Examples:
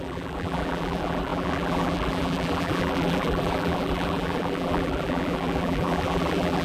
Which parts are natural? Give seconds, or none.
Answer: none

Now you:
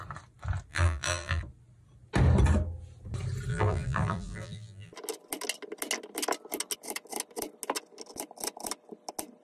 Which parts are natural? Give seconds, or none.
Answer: 0.0-0.7; 1.4-3.5; 4.9-9.4

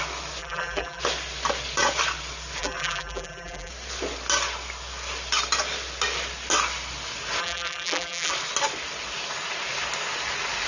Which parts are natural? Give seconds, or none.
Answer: 0.0-0.4; 1.0-2.6; 3.7-7.4; 8.3-10.7

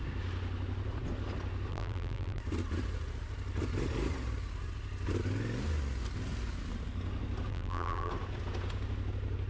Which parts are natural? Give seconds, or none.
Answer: 0.0-1.7; 2.4-7.5; 8.1-9.5

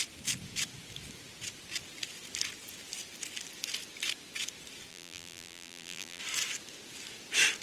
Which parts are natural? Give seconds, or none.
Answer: 0.0-4.9; 6.2-7.6

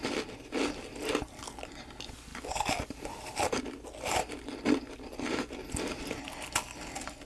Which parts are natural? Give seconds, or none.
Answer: 0.0-7.3

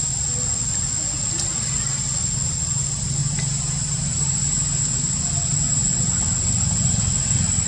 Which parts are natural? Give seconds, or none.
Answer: 0.0-3.2; 5.2-7.7